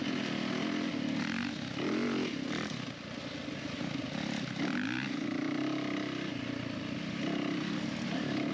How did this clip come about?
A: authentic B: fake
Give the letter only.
A